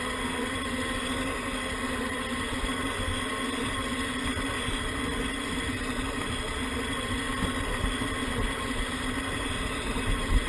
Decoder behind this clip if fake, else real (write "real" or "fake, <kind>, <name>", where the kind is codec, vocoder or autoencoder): real